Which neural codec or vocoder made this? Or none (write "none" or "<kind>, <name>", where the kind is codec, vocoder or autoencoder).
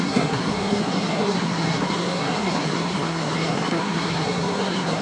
codec, SNAC